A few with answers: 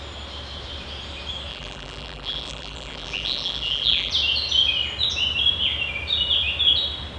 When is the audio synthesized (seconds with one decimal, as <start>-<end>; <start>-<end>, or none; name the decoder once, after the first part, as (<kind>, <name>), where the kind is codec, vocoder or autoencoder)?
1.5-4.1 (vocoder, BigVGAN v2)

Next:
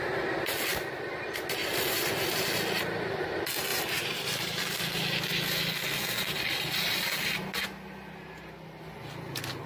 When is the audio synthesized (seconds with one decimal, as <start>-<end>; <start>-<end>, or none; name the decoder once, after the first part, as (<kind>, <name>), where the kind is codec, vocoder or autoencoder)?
1.6-2.4 (vocoder, BigVGAN v2); 3.7-4.6

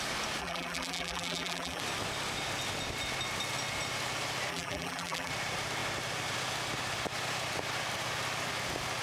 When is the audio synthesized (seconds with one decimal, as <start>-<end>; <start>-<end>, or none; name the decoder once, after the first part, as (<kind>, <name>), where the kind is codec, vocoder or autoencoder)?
0.4-1.8 (vocoder, BigVGAN v2); 4.5-5.3

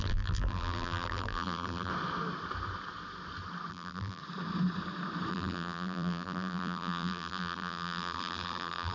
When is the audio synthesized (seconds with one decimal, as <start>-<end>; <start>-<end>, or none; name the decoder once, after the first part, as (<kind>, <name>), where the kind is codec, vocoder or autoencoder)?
0.0-1.9 (vocoder, BigVGAN v2); 3.7-4.2; 5.3-8.9

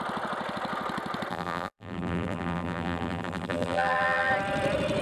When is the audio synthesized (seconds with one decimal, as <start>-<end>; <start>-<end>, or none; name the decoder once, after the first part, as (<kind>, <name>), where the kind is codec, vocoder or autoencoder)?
1.3-4.3 (vocoder, BigVGAN v2)

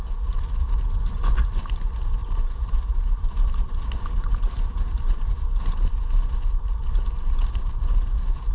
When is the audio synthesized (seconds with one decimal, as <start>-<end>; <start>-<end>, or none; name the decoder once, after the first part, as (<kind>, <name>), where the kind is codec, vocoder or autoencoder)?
2.2-5.4 (vocoder, BigVGAN v2)